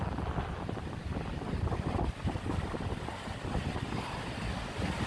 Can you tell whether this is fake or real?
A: real